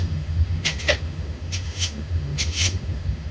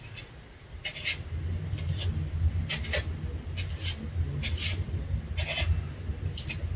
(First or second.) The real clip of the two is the second